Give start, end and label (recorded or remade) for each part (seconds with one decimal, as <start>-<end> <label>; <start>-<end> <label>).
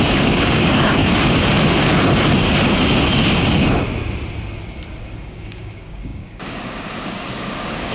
0.0-1.0 remade; 1.0-5.2 recorded; 5.2-7.9 remade